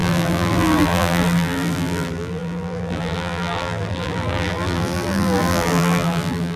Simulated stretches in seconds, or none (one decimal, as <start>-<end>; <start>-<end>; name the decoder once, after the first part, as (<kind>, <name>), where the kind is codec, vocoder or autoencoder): 0.0-6.6 (vocoder, BigVGAN v2)